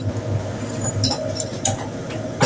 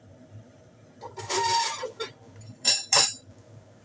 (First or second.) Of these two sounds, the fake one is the second